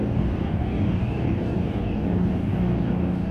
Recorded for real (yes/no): no